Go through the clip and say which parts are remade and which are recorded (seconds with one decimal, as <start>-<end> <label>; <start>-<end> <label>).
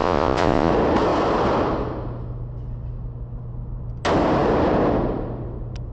0.0-0.7 remade; 0.7-5.9 recorded